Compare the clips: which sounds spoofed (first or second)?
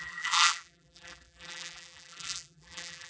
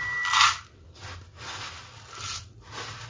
first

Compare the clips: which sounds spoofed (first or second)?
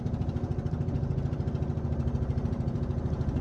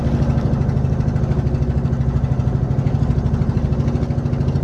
first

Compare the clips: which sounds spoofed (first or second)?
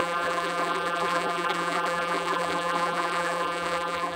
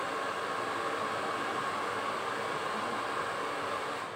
first